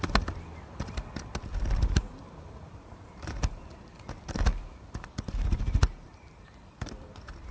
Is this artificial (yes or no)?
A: yes